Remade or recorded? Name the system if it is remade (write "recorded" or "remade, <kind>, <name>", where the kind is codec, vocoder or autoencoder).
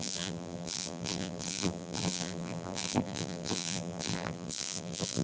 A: remade, vocoder, BigVGAN v2